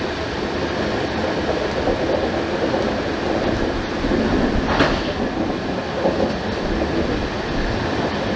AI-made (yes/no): no